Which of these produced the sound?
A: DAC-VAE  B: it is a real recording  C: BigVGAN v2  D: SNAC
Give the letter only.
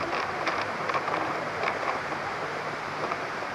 C